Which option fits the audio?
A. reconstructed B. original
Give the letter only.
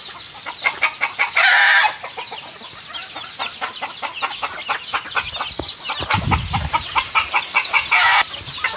B